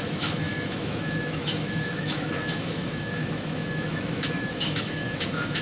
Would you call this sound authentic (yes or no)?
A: no